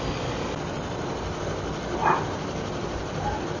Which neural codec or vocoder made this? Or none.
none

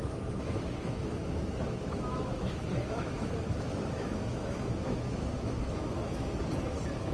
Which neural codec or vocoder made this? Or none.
autoencoder, DAC-VAE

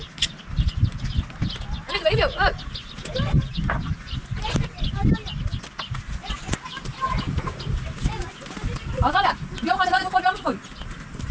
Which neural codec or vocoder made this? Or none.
none